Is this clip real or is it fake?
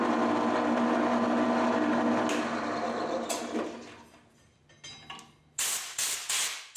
real